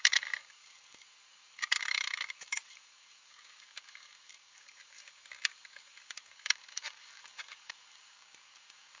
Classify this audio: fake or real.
fake